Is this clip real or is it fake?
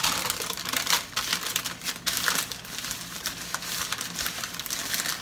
real